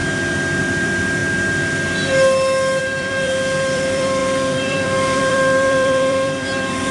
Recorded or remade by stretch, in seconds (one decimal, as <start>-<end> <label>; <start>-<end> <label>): 0.0-0.6 recorded; 0.6-1.2 remade; 1.2-2.8 recorded; 2.8-6.9 remade